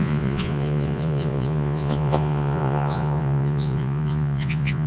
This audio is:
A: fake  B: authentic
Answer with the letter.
A